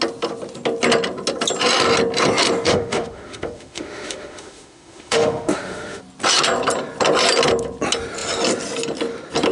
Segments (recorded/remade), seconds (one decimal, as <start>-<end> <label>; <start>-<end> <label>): 0.0-2.7 recorded; 2.7-6.0 remade; 6.0-9.5 recorded